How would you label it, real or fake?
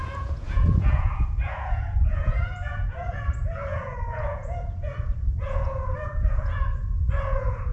fake